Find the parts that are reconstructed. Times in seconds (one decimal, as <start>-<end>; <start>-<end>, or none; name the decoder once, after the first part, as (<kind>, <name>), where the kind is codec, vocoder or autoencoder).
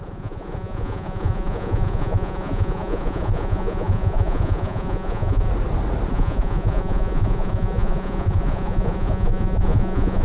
0.0-5.5 (vocoder, Vocos); 6.1-10.2